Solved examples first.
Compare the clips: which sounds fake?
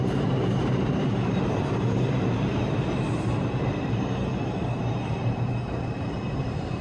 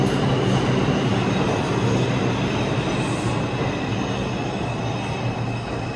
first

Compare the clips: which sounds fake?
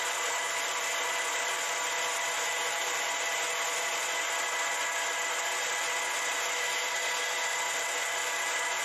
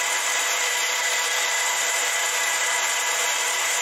second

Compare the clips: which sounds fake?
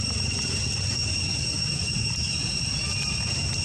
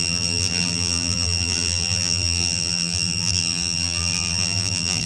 second